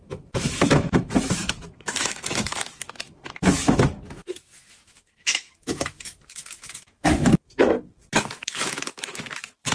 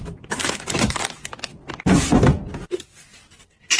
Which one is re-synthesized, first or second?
first